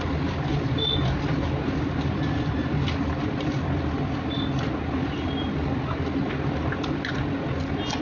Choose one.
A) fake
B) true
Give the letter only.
B